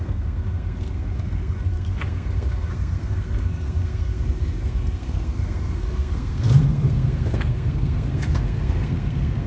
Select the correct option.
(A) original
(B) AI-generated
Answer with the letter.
B